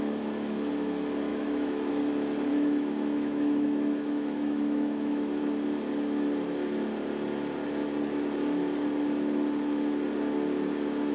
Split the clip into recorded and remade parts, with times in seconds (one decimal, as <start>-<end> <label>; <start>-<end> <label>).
0.0-1.3 recorded; 1.3-1.9 remade; 1.9-2.5 recorded; 2.5-5.4 remade; 5.4-11.1 recorded